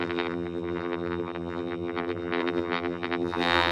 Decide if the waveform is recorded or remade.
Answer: remade